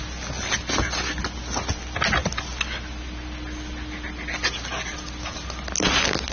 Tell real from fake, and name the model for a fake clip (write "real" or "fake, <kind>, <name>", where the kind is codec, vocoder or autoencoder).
real